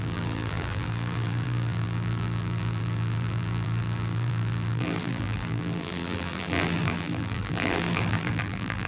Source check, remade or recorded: remade